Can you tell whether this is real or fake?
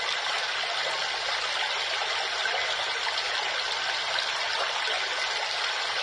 real